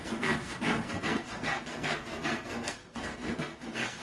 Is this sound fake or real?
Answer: fake